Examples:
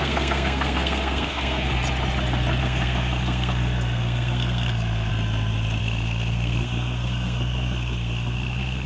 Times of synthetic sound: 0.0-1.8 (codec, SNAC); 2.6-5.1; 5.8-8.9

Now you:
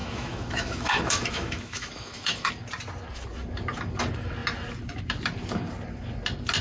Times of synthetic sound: 0.0-2.5 (autoencoder, DAC-VAE)